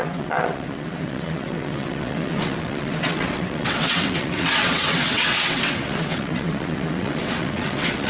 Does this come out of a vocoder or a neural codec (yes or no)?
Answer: yes